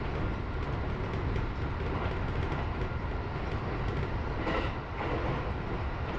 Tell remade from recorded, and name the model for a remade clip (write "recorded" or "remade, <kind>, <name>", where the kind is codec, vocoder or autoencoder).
recorded